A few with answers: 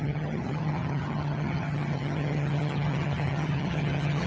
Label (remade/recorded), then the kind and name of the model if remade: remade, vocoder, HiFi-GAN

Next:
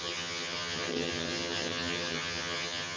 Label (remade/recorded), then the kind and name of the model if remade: remade, vocoder, HiFi-GAN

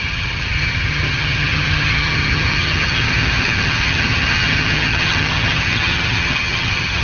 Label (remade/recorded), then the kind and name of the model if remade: remade, vocoder, HiFi-GAN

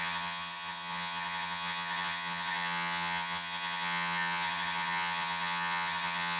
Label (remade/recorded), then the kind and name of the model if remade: remade, vocoder, HiFi-GAN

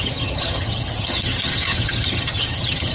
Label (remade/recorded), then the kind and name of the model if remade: remade, vocoder, HiFi-GAN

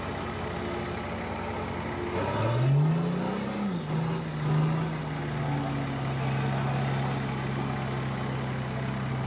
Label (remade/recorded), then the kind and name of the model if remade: recorded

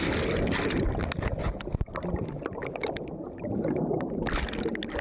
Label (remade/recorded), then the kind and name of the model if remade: recorded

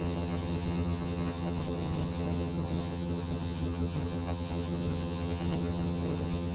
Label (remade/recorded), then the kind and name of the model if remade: remade, vocoder, HiFi-GAN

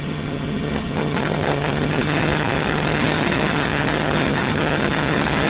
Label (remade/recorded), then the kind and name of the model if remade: remade, vocoder, HiFi-GAN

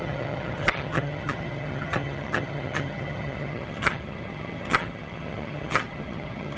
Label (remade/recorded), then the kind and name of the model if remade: remade, vocoder, HiFi-GAN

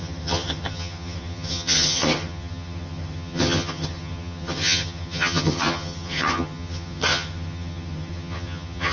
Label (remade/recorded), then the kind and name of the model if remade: remade, vocoder, HiFi-GAN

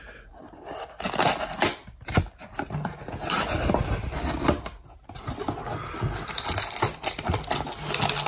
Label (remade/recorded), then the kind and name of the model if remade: recorded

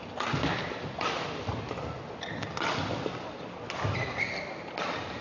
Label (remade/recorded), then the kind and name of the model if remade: recorded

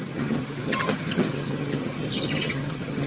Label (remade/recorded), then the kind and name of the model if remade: remade, vocoder, HiFi-GAN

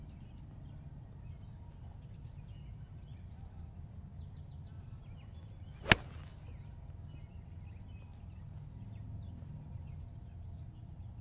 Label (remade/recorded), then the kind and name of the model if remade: recorded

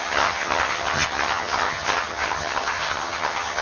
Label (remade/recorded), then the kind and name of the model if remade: remade, vocoder, HiFi-GAN